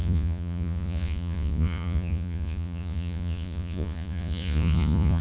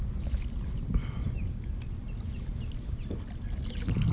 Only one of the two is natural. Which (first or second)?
second